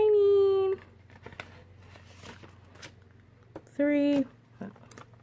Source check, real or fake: real